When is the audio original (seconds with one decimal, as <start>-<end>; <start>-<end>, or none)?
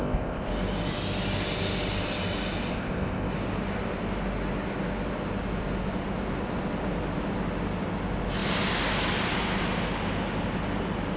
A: 0.5-2.7; 3.3-11.2